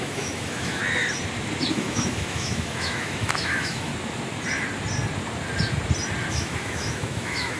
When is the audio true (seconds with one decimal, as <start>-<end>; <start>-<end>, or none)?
0.8-1.7; 3.9-6.3